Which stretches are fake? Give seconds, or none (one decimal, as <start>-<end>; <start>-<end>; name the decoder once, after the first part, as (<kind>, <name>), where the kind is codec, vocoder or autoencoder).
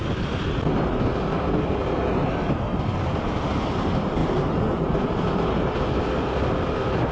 1.1-2.0 (vocoder, BigVGAN v2); 4.2-5.5